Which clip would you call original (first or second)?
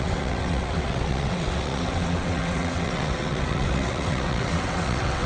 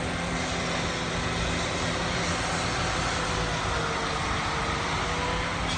second